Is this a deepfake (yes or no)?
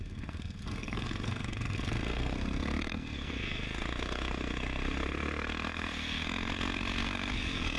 yes